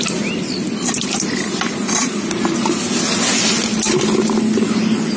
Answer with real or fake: real